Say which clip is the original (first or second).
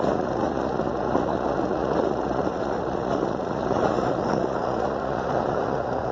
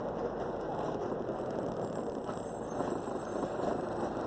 second